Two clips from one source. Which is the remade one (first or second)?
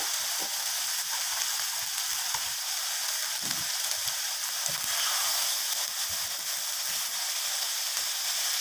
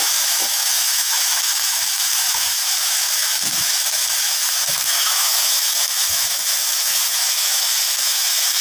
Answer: second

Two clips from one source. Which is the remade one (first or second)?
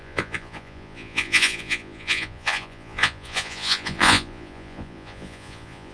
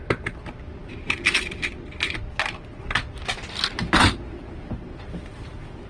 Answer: first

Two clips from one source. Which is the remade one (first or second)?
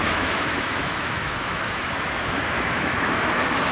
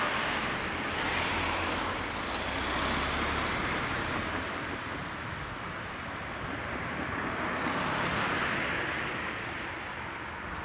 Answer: first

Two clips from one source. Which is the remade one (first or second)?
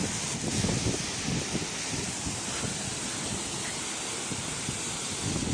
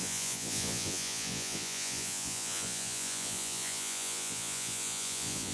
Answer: second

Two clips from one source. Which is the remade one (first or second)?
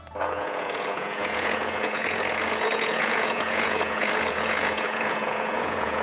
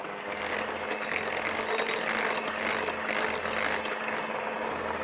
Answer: first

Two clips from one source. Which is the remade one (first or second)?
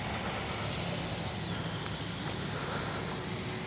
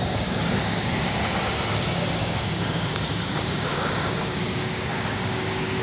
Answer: second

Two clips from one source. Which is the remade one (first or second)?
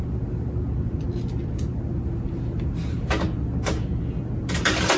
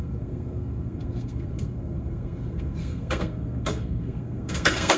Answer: second